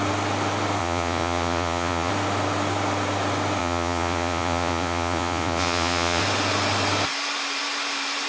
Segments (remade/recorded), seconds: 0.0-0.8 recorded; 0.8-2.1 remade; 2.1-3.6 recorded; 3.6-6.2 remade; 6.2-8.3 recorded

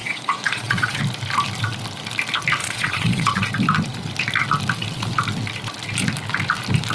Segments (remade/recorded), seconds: 0.0-1.0 remade; 1.0-2.6 recorded; 2.6-3.5 remade; 3.5-6.9 recorded